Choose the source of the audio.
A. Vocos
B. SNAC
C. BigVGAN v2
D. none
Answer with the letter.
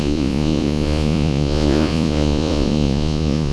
A